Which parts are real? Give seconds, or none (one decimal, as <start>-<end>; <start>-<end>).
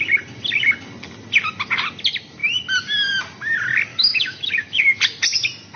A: 0.0-3.9; 4.8-5.8